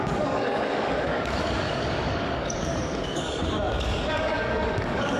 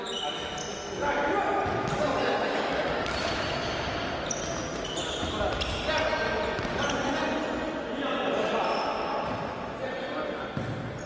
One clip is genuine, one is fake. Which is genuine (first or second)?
second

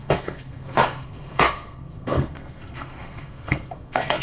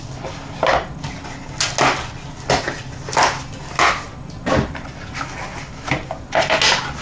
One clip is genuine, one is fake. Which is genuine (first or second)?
second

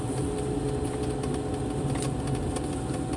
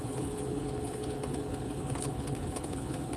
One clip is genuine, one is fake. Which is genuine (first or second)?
first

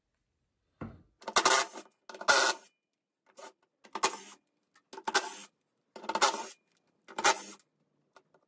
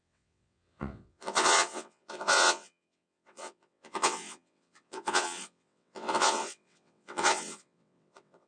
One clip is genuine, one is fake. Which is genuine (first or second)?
first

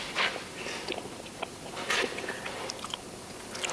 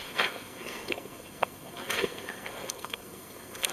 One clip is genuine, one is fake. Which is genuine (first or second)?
first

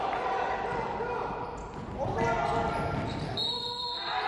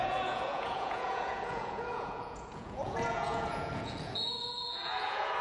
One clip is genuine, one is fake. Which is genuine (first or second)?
first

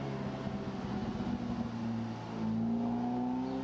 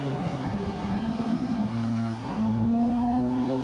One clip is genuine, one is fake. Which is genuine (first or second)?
first